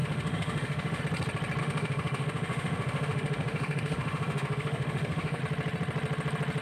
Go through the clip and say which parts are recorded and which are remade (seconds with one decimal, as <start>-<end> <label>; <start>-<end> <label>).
0.0-1.0 remade; 1.0-1.6 recorded; 1.6-5.4 remade; 5.4-6.6 recorded